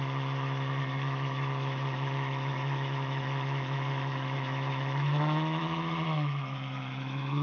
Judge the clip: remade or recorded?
remade